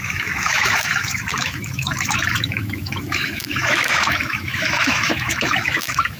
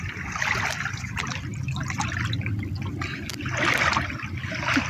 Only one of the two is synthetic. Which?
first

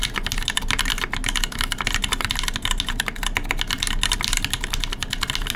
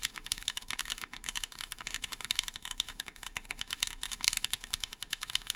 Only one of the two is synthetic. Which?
second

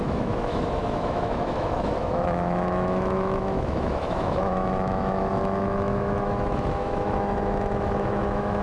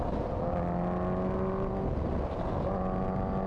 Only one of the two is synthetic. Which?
first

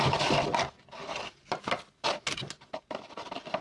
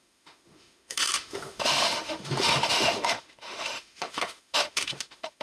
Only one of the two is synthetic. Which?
second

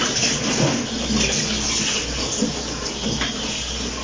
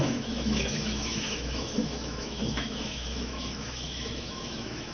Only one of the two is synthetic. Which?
second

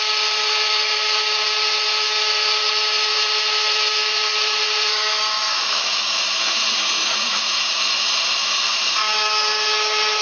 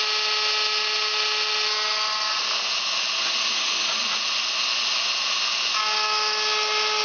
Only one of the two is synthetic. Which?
first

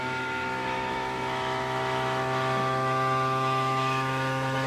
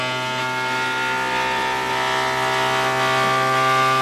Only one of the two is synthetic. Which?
first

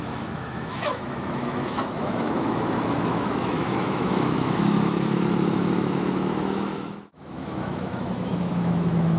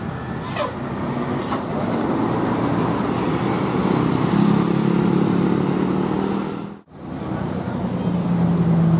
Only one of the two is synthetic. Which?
first